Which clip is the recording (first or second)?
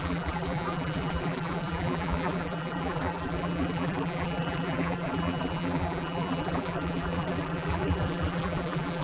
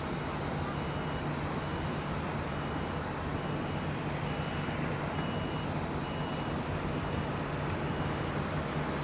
second